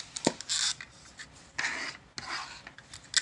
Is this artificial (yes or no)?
no